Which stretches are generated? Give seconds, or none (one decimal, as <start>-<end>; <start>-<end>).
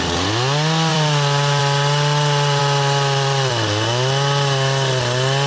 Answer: 0.9-1.6; 2.6-3.5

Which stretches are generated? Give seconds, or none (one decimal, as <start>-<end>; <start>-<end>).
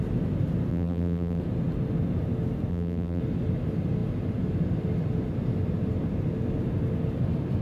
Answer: 0.7-1.4; 2.7-3.2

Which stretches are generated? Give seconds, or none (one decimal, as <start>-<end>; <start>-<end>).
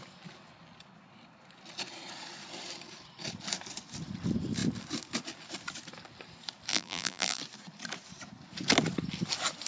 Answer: 6.7-7.4